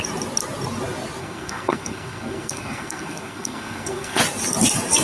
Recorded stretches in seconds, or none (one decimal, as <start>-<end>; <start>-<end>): 0.0-1.2; 4.2-5.0